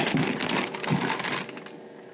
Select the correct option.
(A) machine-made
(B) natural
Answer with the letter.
B